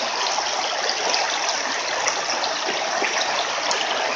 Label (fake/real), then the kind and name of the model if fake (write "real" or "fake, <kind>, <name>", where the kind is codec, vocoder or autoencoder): real